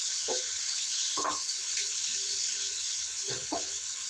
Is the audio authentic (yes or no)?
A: no